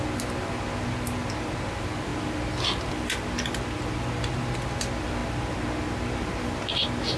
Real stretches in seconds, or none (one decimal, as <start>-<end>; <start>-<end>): 0.0-7.2

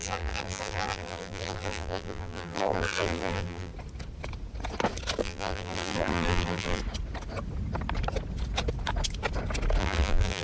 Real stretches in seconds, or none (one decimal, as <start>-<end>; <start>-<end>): 3.7-5.2; 6.8-9.8

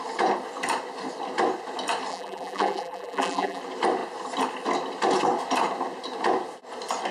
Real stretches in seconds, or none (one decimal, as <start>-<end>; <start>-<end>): 0.0-2.1; 3.6-7.1

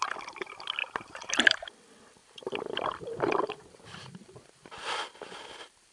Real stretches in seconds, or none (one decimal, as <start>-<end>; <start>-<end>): 0.0-0.8; 1.7-2.2